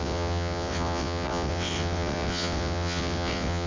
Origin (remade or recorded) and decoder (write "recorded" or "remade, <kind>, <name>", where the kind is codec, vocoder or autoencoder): remade, vocoder, WaveNeXt